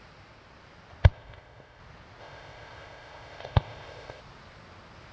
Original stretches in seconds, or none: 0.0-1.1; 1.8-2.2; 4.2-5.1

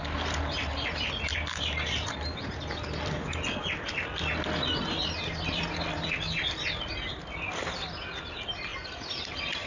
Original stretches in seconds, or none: 0.0-9.7

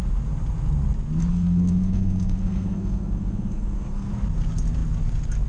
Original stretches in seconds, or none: 0.0-1.3; 4.1-5.5

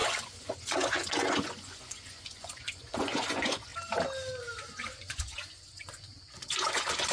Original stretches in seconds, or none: 3.7-4.7

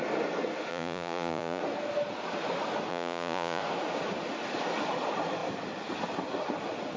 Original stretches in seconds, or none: 0.0-0.7; 1.6-2.9; 3.6-7.0

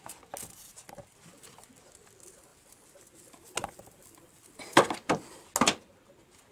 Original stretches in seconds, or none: 0.0-6.5

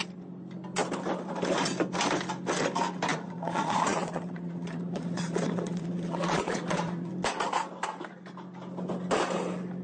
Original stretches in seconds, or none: 0.0-3.1; 7.1-9.8